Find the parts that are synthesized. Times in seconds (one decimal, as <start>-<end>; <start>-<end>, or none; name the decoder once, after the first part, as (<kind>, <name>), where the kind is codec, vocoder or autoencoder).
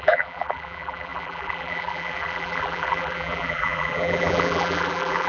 0.0-5.3 (vocoder, BigVGAN v2)